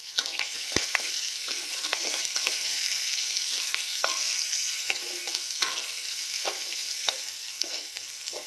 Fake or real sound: fake